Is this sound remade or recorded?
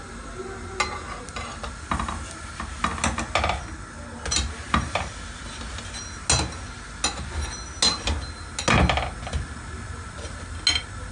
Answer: recorded